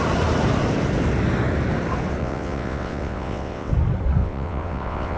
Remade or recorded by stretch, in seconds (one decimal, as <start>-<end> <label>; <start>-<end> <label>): 0.0-2.2 recorded; 2.2-3.7 remade; 3.7-4.2 recorded; 4.2-5.2 remade